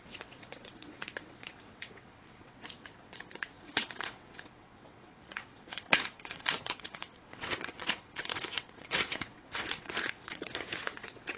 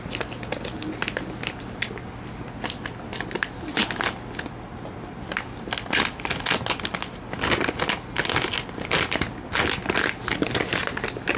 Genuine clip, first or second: second